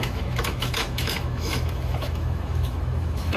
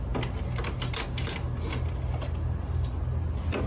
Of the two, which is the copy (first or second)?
first